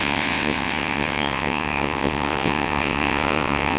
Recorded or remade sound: remade